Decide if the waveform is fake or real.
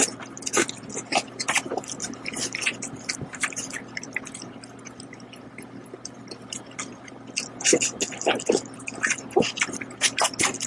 real